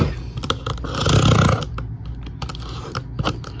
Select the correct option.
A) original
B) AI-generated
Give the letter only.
A